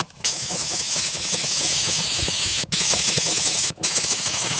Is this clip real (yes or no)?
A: no